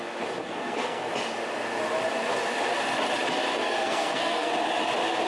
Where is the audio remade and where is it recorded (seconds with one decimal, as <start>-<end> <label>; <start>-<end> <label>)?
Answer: 0.0-0.4 recorded; 0.4-1.1 remade; 1.1-3.5 recorded; 3.5-4.5 remade; 4.5-5.3 recorded